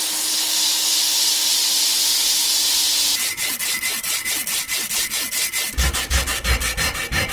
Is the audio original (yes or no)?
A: yes